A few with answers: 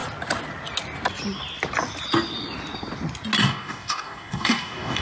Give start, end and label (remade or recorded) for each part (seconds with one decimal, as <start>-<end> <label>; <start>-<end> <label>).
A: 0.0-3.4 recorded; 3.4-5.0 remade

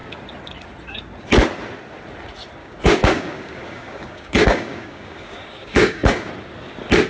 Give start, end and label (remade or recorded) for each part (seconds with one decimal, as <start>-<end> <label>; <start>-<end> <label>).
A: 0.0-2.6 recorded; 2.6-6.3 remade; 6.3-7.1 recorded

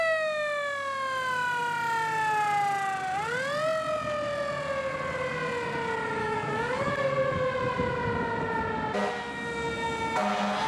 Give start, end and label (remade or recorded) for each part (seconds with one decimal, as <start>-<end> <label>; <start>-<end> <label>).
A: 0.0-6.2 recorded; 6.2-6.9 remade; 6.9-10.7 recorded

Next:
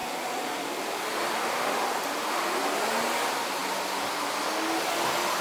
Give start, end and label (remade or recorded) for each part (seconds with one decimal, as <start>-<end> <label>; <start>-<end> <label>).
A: 0.0-5.4 recorded

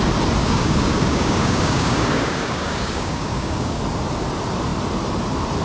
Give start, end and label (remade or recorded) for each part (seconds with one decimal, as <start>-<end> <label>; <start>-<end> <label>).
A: 0.0-0.4 recorded; 0.4-3.8 remade; 3.8-5.6 recorded

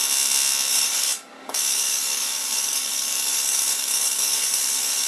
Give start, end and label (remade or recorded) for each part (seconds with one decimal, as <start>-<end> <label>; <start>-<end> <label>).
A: 0.0-0.7 recorded; 0.7-5.1 remade

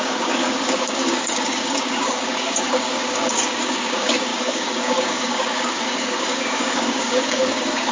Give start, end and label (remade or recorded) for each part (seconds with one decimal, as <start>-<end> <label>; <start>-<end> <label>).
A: 0.0-7.9 remade

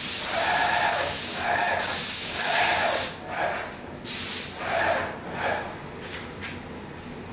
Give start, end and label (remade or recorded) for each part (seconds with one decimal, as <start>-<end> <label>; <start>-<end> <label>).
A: 0.0-0.9 recorded; 0.9-2.6 remade; 2.6-7.3 recorded